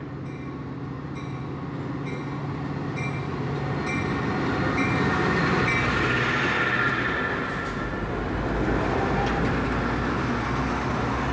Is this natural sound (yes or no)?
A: yes